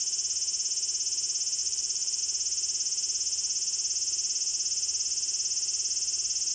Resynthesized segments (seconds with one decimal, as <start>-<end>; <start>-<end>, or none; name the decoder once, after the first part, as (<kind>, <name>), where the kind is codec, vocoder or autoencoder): 1.6-2.2 (vocoder, BigVGAN v2)